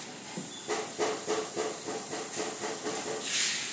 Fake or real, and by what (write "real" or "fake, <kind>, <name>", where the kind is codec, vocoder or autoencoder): real